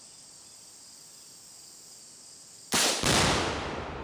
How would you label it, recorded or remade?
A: recorded